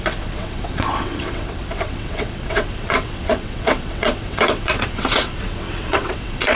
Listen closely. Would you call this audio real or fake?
fake